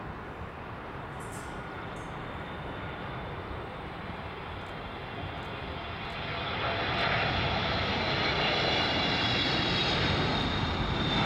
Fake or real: real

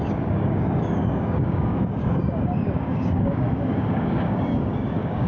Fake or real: fake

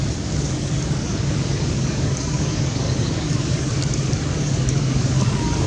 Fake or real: fake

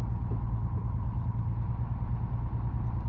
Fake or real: real